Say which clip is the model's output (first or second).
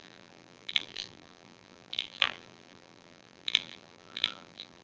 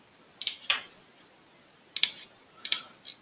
first